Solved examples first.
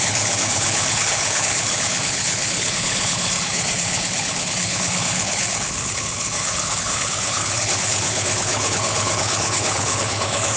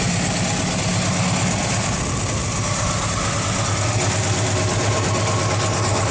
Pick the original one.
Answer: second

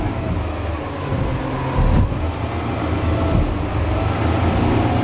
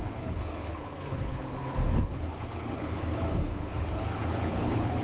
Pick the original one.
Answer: first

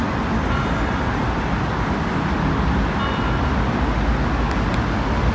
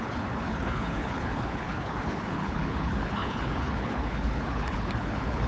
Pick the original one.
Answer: first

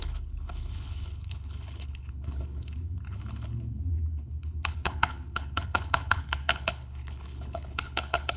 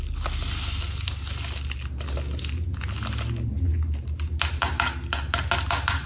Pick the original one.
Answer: second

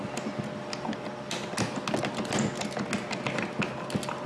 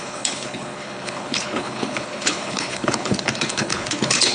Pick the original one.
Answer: first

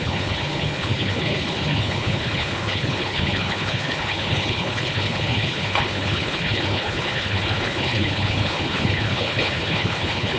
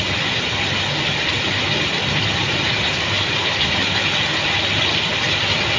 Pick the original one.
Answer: second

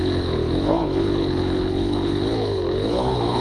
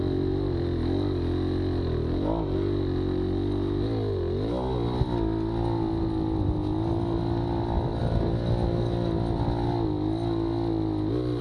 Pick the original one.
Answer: second